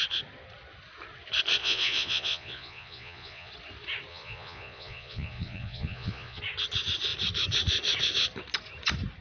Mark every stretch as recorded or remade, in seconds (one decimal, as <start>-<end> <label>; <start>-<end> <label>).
0.0-1.6 recorded; 1.6-3.5 remade; 3.5-4.1 recorded; 4.1-6.4 remade; 6.4-9.2 recorded